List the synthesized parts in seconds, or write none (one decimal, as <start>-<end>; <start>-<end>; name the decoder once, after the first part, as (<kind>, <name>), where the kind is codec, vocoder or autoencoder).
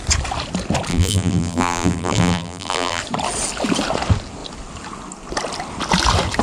0.9-3.0 (vocoder, BigVGAN v2)